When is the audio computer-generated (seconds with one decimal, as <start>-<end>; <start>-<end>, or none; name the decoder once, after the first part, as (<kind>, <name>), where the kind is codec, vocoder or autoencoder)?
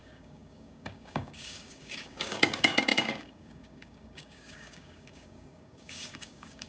0.0-6.7 (codec, DAC)